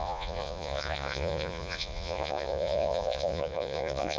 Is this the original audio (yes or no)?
no